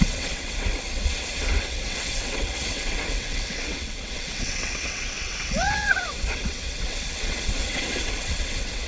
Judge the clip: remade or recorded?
remade